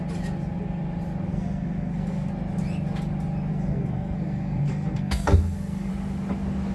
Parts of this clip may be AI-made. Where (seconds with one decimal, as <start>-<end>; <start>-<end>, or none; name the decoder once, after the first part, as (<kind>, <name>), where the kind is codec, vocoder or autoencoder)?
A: 1.3-2.3 (codec, SNAC); 3.5-5.9